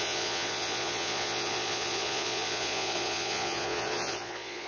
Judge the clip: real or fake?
fake